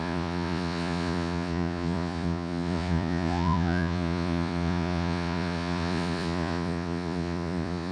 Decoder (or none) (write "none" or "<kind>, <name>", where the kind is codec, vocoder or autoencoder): vocoder, Vocos